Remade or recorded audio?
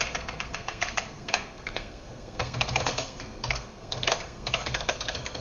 remade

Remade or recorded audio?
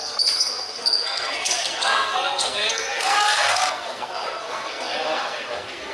remade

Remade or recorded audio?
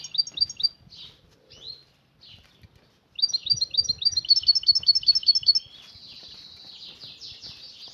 recorded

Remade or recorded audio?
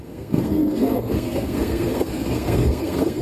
remade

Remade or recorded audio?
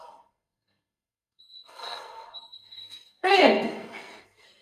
remade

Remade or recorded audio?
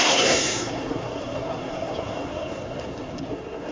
remade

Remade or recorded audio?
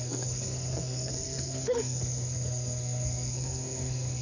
remade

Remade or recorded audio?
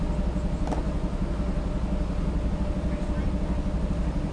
recorded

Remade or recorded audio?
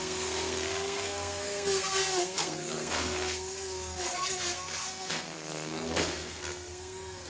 remade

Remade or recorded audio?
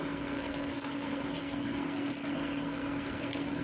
remade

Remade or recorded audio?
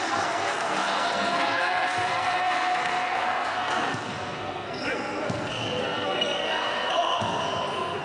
remade